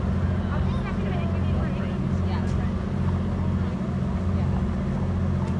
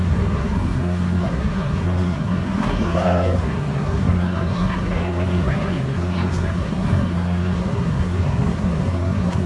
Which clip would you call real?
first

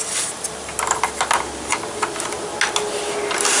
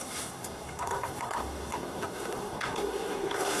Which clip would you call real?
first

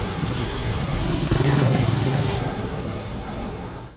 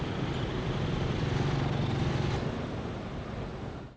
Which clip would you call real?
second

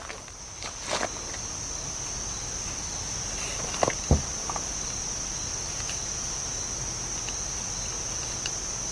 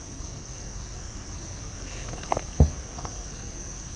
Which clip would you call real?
first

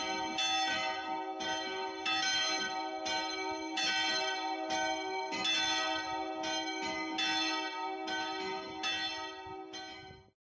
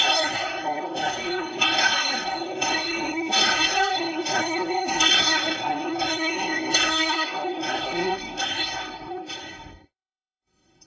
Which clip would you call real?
first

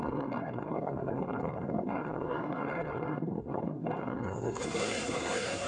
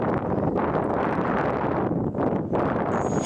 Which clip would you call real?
second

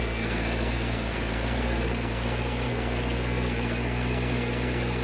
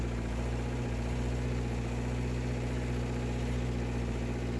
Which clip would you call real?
second